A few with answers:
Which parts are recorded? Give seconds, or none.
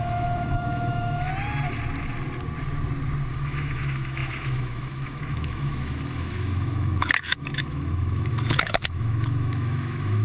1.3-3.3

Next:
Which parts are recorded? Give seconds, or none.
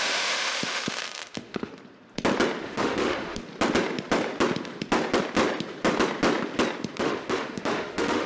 1.7-2.6; 3.4-7.0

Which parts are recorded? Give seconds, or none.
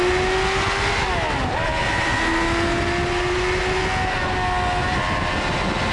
0.0-5.9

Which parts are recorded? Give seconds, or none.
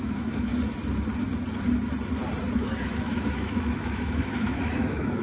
0.5-2.8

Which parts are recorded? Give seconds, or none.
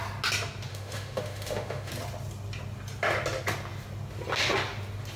0.0-0.7; 1.9-5.2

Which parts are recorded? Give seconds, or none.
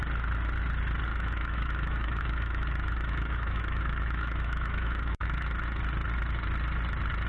0.0-1.1; 5.5-7.3